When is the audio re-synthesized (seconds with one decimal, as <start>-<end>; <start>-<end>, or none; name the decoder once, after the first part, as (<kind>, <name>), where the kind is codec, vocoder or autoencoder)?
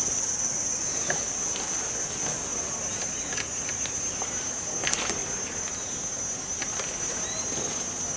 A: none